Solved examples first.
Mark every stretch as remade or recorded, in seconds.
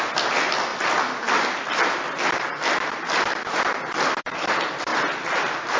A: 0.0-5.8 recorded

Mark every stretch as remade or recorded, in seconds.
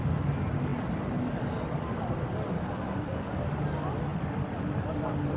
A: 0.0-0.7 recorded; 0.7-1.3 remade; 1.3-5.4 recorded